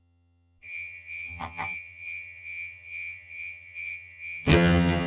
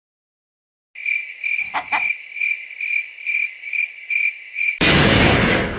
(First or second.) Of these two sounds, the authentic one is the second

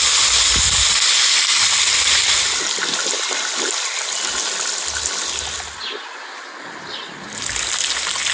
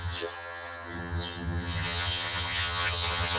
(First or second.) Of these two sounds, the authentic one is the first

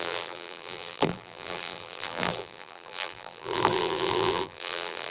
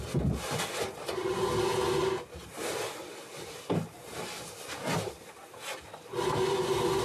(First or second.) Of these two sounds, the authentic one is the second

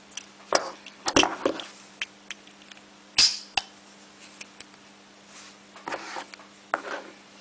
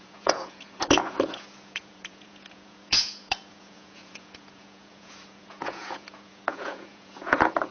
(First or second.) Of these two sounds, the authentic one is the first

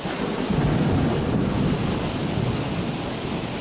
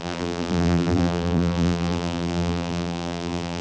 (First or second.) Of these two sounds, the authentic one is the first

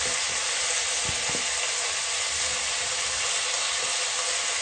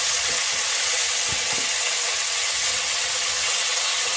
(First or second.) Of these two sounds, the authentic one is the first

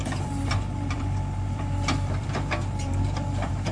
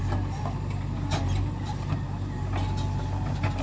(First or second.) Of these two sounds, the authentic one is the second